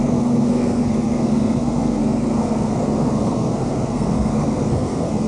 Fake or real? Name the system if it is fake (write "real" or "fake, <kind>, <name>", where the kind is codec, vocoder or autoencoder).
fake, codec, SNAC